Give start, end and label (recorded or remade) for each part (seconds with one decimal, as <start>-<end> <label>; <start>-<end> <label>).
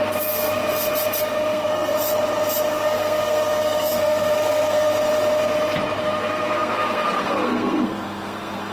0.0-0.6 remade; 0.6-1.2 recorded; 1.2-1.9 remade; 1.9-2.7 recorded; 2.7-4.9 remade; 4.9-6.0 recorded; 6.0-8.7 remade